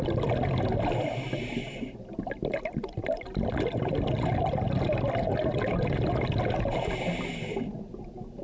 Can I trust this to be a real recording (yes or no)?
yes